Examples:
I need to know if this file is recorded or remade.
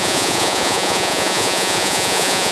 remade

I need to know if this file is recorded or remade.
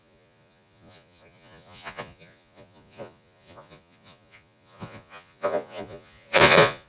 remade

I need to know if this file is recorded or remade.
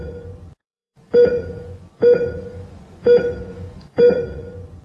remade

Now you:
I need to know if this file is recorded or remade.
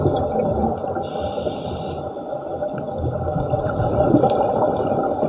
recorded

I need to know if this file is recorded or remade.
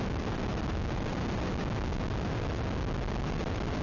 recorded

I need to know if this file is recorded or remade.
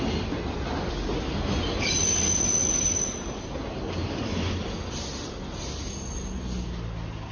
recorded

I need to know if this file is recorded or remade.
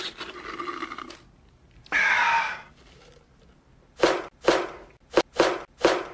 recorded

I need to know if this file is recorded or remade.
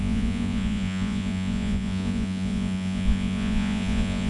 remade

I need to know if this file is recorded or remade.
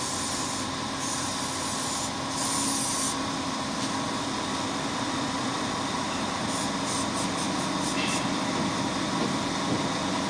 recorded